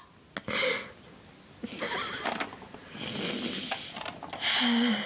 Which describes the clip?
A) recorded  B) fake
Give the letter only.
A